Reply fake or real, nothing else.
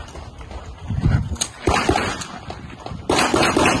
real